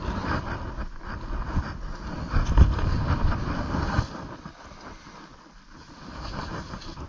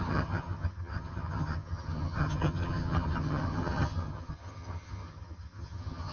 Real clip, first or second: first